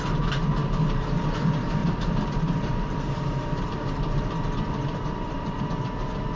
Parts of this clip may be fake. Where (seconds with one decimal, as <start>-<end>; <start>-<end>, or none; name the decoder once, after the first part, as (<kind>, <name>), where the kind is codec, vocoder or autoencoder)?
1.8-5.6 (vocoder, BigVGAN v2)